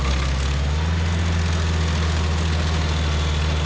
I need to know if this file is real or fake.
real